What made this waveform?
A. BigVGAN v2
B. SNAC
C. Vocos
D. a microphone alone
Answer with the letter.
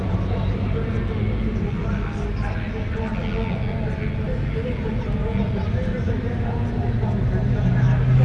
D